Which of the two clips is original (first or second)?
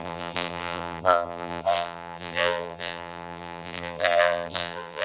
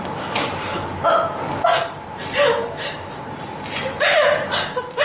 second